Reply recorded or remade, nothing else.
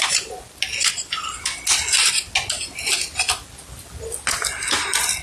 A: recorded